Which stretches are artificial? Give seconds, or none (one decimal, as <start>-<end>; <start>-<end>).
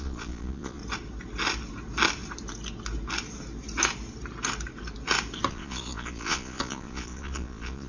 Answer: 0.0-0.8; 5.5-7.9